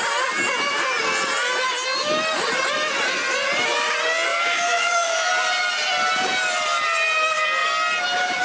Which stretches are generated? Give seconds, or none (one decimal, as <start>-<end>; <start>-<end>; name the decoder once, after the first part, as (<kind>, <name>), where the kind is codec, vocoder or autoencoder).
4.3-5.3 (autoencoder, DAC-VAE)